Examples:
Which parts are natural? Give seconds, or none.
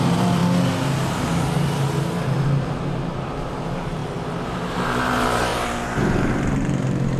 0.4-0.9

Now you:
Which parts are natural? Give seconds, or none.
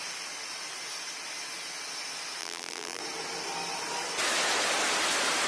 0.0-2.4; 3.0-5.5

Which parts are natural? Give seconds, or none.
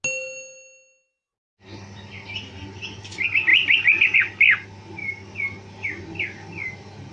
0.0-3.5; 4.3-7.1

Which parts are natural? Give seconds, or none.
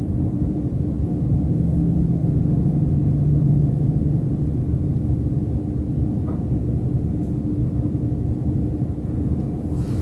0.0-2.2; 4.0-10.0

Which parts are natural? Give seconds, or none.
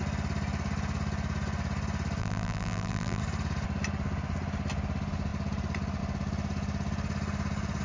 0.0-2.2; 3.2-7.8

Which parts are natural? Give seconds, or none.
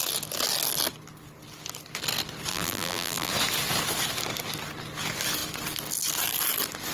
0.0-2.5; 3.3-6.9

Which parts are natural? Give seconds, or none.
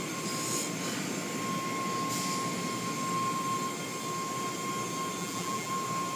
0.0-5.2; 5.7-6.2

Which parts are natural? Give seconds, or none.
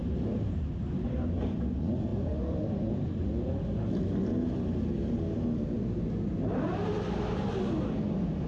1.6-8.5